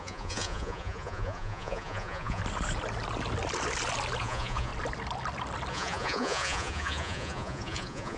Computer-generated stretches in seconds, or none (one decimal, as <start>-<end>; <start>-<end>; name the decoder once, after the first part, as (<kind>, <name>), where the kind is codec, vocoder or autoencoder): 0.0-2.4 (vocoder, Vocos); 4.2-4.7; 5.7-8.2